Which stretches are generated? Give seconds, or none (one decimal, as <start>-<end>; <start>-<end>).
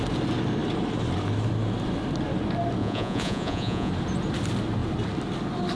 2.8-3.9